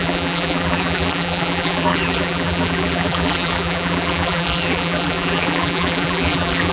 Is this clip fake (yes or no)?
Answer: yes